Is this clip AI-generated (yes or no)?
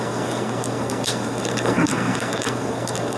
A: yes